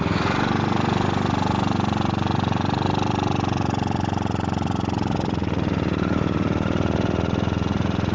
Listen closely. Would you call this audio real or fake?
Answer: real